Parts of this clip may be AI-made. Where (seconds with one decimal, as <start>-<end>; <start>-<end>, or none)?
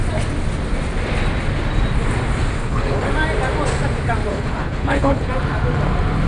2.6-3.1; 4.3-5.3